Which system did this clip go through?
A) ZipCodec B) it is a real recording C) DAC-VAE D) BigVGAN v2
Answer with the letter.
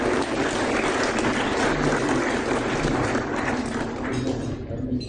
B